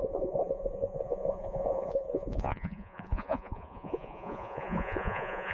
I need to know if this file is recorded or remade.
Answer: remade